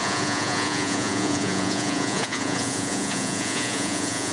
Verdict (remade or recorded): remade